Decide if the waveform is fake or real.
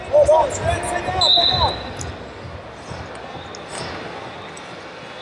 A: real